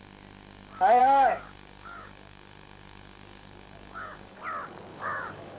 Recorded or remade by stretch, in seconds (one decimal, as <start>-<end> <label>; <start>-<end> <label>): 0.0-1.0 recorded; 1.0-4.4 remade; 4.4-4.9 recorded; 4.9-5.6 remade